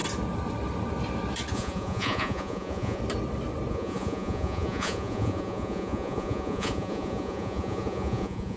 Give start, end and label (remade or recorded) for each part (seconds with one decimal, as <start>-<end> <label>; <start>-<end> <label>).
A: 0.0-1.5 recorded; 1.5-3.0 remade; 3.0-3.7 recorded; 3.7-8.6 remade